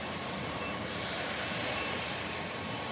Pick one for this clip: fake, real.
fake